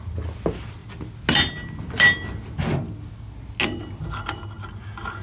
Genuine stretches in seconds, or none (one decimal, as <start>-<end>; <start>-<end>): 0.0-5.2